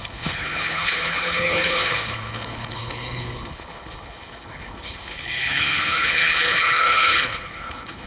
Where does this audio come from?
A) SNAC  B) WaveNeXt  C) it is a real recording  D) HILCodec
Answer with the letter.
D